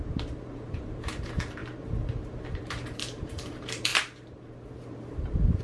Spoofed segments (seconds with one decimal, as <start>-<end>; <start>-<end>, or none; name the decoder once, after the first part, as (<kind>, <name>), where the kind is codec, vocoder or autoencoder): 0.0-5.6 (vocoder, BigVGAN v2)